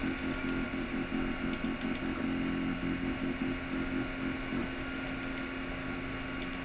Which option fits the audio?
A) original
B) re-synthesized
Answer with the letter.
A